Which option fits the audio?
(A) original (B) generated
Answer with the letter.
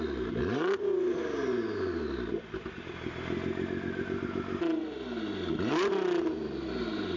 A